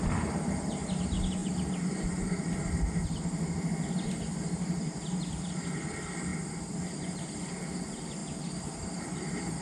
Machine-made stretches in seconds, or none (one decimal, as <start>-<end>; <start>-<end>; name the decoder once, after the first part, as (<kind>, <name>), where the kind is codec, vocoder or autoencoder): none